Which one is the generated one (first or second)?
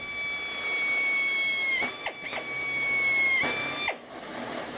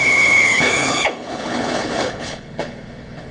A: second